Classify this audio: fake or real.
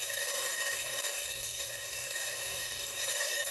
fake